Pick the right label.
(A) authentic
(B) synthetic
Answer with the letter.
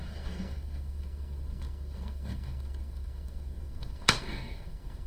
B